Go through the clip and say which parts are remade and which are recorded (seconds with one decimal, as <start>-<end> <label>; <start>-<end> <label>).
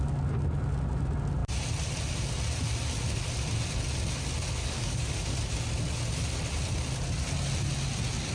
0.0-4.6 recorded; 4.6-5.3 remade; 5.3-8.3 recorded